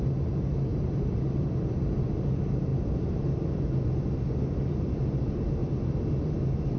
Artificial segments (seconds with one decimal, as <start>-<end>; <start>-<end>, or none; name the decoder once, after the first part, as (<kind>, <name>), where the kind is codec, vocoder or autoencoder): 0.7-2.1 (vocoder, BigVGAN v2); 2.7-4.2; 5.6-6.8